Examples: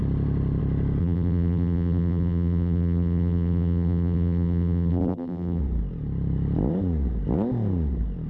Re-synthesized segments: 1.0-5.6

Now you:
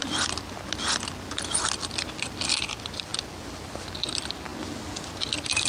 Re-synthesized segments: 1.1-4.5; 5.2-5.7

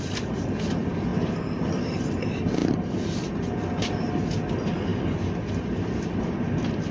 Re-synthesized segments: 1.1-2.1; 4.9-6.3